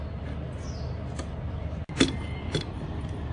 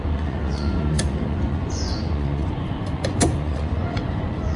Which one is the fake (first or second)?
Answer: second